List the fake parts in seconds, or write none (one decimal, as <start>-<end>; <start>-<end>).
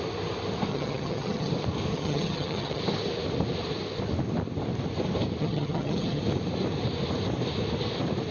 0.7-1.5; 1.9-2.8; 5.4-6.2